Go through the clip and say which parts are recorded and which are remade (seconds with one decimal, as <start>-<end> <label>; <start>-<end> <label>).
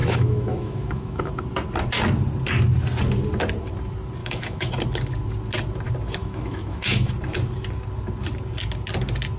0.0-1.3 remade; 1.3-4.2 recorded; 4.2-4.7 remade; 4.7-6.2 recorded; 6.2-7.1 remade; 7.1-9.4 recorded